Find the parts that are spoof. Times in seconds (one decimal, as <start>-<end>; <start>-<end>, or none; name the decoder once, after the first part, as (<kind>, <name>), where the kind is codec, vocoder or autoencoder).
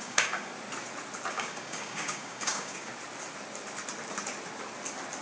0.0-0.5 (codec, DAC); 1.3-2.9